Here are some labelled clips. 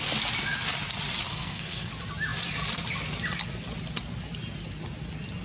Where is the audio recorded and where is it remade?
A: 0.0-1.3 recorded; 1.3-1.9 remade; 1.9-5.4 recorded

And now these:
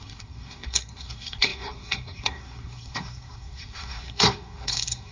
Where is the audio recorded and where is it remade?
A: 0.0-5.1 remade

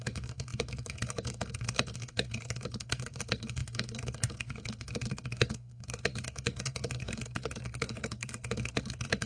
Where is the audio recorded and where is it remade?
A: 0.0-9.3 remade

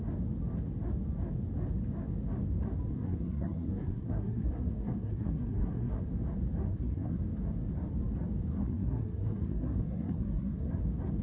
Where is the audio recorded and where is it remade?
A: 0.0-2.9 recorded; 2.9-6.0 remade; 6.0-6.7 recorded; 6.7-7.2 remade; 7.2-8.5 recorded; 8.5-10.7 remade; 10.7-11.2 recorded

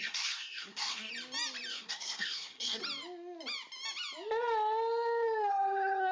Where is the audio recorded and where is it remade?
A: 0.0-1.1 remade; 1.1-1.7 recorded; 1.7-2.8 remade; 2.8-5.5 recorded; 5.5-6.1 remade